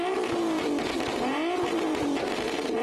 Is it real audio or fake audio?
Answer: real